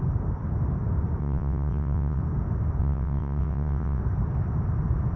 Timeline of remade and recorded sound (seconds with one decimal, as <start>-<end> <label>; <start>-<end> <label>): 0.0-1.2 recorded; 1.2-2.2 remade; 2.2-2.8 recorded; 2.8-4.0 remade; 4.0-5.2 recorded